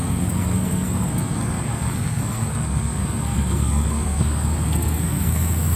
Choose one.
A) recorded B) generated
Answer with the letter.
B